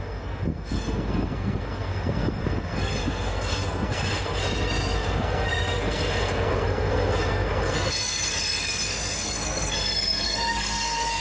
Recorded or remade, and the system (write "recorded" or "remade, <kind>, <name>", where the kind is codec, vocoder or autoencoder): remade, codec, SNAC